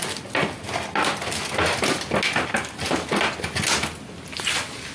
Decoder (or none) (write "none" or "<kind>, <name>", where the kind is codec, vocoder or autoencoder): none